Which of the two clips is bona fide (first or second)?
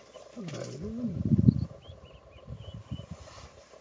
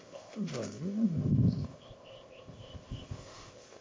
first